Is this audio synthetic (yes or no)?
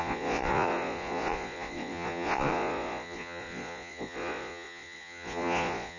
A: yes